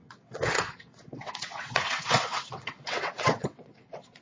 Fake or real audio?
fake